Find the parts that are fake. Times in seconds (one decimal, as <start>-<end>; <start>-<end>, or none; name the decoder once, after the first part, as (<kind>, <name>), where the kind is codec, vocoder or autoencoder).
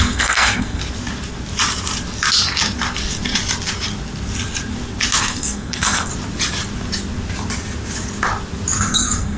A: 0.0-0.8 (codec, SNAC); 5.2-6.1; 8.8-9.4